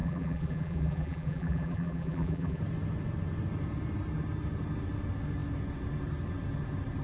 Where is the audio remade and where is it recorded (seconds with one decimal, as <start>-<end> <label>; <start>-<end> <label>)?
0.0-2.6 remade; 2.6-7.0 recorded